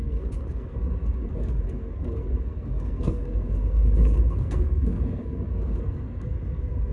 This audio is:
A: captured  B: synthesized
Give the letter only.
B